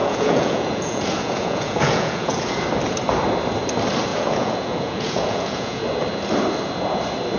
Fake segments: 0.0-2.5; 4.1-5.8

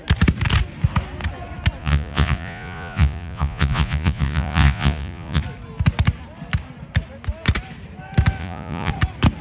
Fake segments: 1.8-5.4; 8.4-8.9

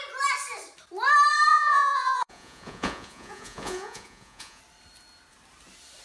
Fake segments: 1.5-4.6

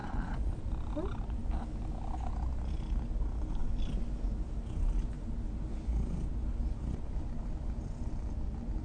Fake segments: 0.0-0.6

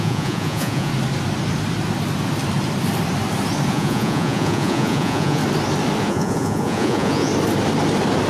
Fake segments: 0.0-0.9; 3.7-5.4; 6.0-7.3

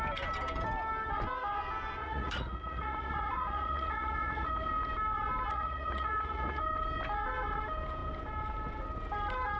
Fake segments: 2.0-4.5; 5.5-6.6